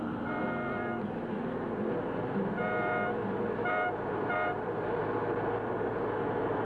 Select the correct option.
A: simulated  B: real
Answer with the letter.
B